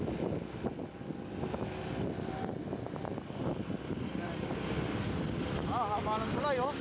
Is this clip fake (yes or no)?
no